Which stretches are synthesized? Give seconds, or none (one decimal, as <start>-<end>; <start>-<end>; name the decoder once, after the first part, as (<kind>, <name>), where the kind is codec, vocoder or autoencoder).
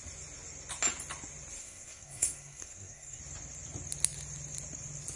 1.6-3.2 (codec, SNAC)